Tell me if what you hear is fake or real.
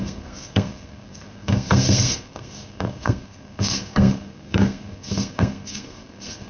fake